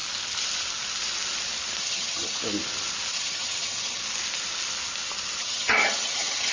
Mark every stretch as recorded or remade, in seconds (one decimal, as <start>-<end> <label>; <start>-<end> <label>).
0.0-1.8 recorded; 1.8-2.4 remade; 2.4-3.1 recorded; 3.1-4.0 remade; 4.0-5.4 recorded; 5.4-6.5 remade